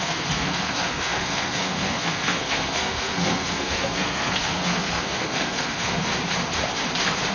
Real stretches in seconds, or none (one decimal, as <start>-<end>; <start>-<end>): 6.1-7.3